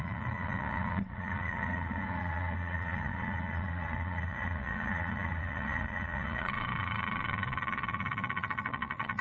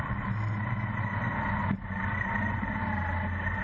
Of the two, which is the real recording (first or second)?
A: second